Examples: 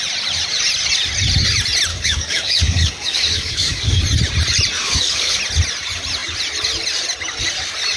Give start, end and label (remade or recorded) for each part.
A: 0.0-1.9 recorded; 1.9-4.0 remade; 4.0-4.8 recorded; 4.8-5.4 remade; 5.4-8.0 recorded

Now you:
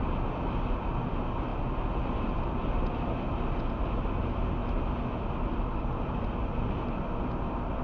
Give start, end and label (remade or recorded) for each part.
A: 0.0-7.8 recorded

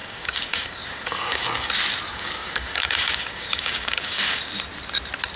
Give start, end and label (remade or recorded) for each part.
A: 0.0-1.7 remade; 1.7-2.1 recorded; 2.1-4.4 remade; 4.4-5.4 recorded

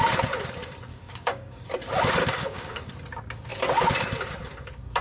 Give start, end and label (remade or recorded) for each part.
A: 0.0-0.9 recorded; 0.9-1.6 remade; 1.6-2.2 recorded; 2.2-2.9 remade; 2.9-5.0 recorded

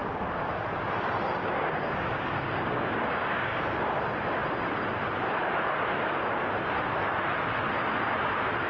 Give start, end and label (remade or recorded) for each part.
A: 0.0-0.5 remade; 0.5-1.4 recorded; 1.4-3.6 remade; 3.6-8.7 recorded